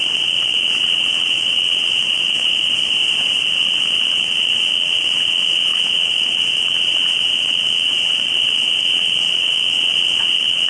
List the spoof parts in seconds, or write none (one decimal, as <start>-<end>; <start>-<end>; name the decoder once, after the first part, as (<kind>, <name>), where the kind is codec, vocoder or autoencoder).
0.0-2.7 (vocoder, WaveNeXt); 3.5-10.7